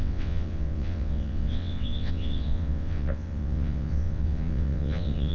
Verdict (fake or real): fake